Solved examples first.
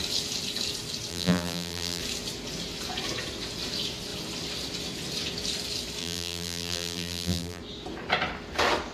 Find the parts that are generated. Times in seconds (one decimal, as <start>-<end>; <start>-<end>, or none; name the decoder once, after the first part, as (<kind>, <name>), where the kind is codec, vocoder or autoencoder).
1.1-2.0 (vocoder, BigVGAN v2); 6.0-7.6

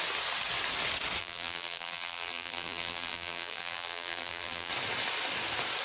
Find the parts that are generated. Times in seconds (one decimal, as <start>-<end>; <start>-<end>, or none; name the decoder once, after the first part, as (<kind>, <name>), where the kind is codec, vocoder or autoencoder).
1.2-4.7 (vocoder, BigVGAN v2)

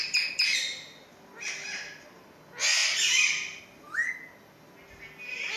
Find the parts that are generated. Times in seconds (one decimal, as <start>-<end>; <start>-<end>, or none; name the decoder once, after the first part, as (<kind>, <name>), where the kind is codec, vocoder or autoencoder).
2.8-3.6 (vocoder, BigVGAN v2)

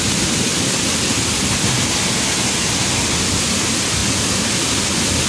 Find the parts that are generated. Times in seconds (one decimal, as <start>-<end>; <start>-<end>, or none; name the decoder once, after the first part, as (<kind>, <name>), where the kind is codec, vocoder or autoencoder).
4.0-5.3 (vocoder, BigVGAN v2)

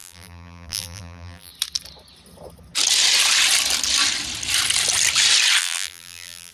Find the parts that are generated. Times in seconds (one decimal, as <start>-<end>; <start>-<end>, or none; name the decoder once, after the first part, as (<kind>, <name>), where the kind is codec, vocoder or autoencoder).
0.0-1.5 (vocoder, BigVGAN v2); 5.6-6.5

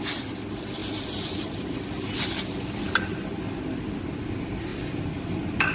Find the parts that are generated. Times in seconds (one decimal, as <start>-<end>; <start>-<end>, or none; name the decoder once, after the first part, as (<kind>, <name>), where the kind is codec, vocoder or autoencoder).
none